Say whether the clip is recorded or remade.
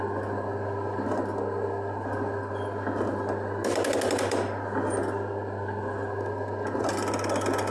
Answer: recorded